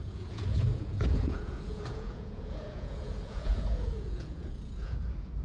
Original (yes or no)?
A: no